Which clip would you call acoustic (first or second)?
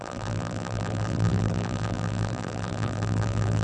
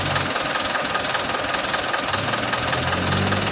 second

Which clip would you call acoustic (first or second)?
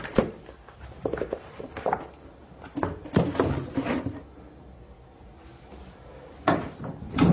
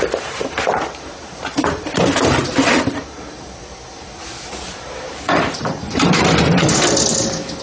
first